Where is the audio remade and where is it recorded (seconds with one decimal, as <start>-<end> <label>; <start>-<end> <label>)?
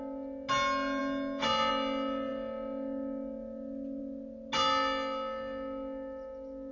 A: 0.0-6.7 recorded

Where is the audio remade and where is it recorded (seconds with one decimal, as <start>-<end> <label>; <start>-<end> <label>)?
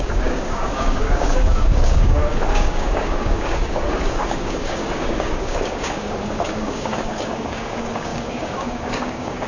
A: 0.0-9.5 remade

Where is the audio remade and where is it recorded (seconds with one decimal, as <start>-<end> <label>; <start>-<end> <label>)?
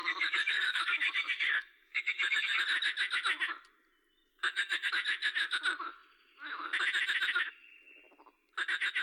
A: 0.0-2.6 remade; 2.6-4.3 recorded; 4.3-4.9 remade; 4.9-9.0 recorded